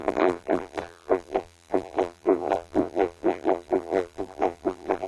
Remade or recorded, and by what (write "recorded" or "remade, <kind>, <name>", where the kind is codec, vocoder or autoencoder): remade, vocoder, BigVGAN v2